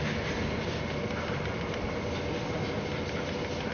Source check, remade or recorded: recorded